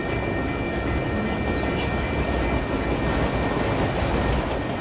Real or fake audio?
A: real